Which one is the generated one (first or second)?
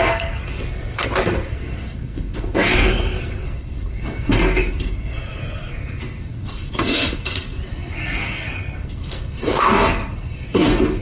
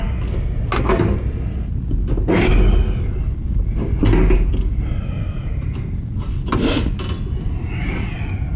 first